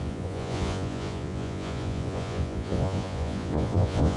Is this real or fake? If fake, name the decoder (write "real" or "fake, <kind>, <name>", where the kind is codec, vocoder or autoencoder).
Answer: fake, vocoder, Vocos